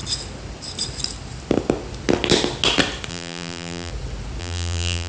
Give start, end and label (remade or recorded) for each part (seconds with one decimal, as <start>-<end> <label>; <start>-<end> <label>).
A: 0.0-3.1 recorded; 3.1-3.9 remade; 3.9-4.4 recorded; 4.4-5.1 remade